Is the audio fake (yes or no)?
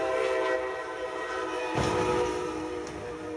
no